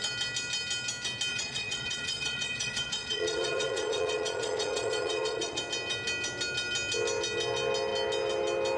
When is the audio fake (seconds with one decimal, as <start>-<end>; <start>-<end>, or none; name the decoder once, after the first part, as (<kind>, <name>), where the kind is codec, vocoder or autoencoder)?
1.3-5.6 (vocoder, Vocos)